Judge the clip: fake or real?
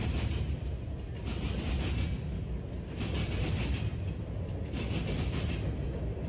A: real